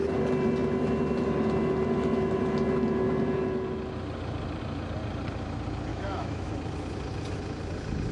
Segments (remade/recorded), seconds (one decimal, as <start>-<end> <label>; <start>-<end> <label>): 0.0-5.9 recorded; 5.9-6.5 remade; 6.5-8.1 recorded